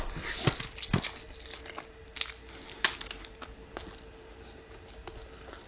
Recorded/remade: recorded